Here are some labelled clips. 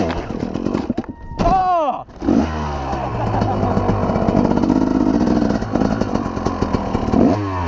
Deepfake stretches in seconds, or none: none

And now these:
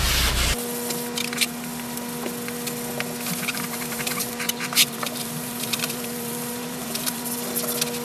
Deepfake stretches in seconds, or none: 3.5-7.5

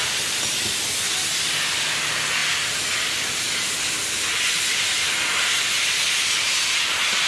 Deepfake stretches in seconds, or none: none

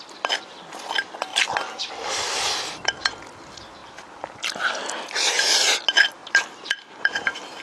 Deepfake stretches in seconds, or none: 1.3-1.9; 6.2-7.6

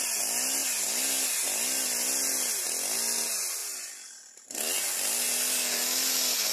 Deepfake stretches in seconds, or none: none

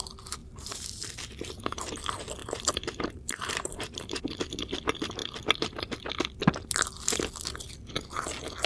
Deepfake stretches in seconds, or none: 0.4-1.9; 2.4-4.2

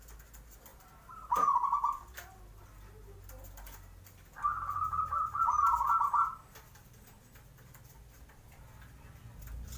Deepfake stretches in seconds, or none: 0.7-1.5; 4.5-6.5

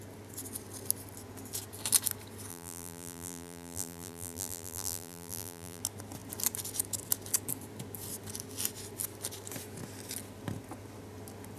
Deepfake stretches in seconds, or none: 2.5-5.8